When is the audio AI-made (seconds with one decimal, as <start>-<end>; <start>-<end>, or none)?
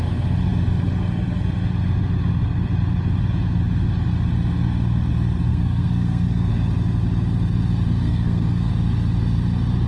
5.5-6.5; 8.0-8.7